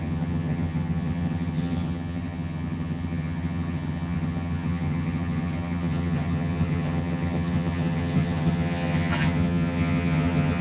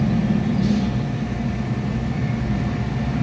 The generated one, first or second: first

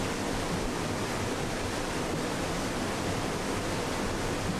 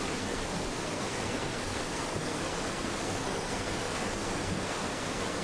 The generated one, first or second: second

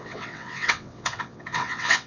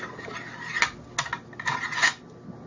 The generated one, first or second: first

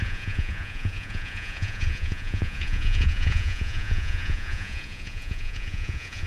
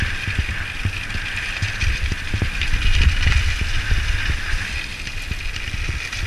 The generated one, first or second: first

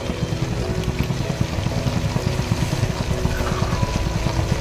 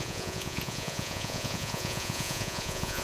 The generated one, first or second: second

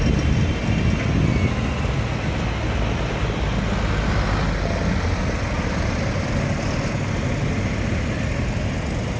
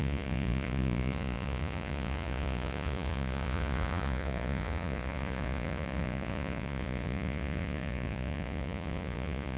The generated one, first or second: second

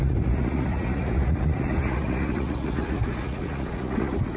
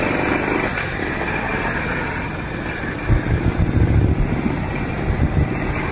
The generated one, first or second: first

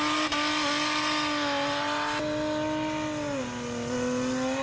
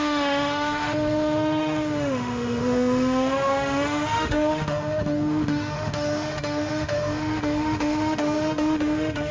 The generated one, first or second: second